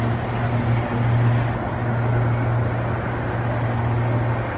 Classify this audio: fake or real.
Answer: real